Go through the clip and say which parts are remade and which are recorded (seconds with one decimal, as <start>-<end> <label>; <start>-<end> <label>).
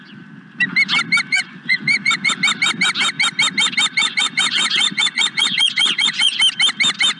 0.0-1.3 recorded; 1.3-2.3 remade; 2.3-4.0 recorded; 4.0-6.4 remade; 6.4-7.2 recorded